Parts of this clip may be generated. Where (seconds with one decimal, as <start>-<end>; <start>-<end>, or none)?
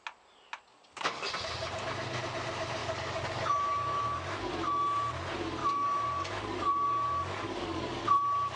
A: 0.7-1.3; 2.8-4.5; 5.6-8.0